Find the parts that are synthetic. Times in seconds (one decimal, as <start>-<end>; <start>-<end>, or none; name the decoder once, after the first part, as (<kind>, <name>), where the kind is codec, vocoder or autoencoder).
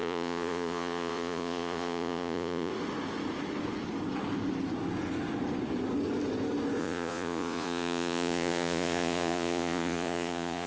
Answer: 0.0-2.7 (vocoder, Vocos); 6.8-10.7